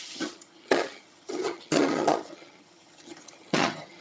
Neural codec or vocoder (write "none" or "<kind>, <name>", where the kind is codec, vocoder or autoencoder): vocoder, HiFi-GAN